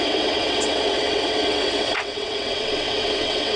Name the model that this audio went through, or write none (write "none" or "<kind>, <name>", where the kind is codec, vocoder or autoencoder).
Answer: vocoder, WaveNeXt